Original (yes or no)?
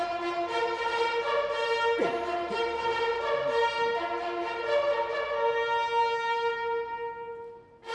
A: yes